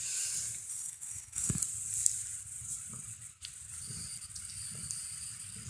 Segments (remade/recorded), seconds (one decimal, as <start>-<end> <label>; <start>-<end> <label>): 0.0-0.7 recorded; 0.7-1.5 remade; 1.5-5.7 recorded